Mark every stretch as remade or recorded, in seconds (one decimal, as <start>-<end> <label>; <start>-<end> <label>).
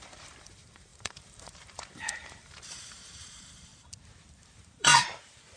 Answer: 0.0-3.7 remade; 3.7-4.3 recorded; 4.3-4.9 remade; 4.9-5.6 recorded